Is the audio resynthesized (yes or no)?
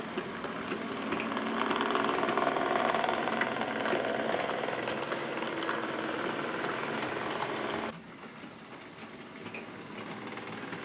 no